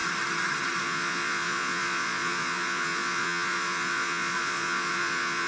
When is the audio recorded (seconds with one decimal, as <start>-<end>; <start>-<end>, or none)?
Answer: 0.0-0.8